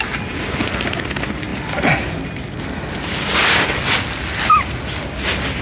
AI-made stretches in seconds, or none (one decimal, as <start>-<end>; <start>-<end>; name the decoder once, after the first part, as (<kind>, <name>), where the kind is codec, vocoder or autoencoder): none